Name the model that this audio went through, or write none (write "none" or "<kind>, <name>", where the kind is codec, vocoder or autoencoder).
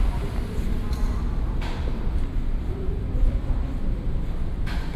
vocoder, BigVGAN v2